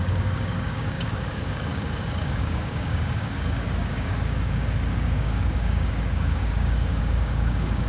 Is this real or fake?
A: fake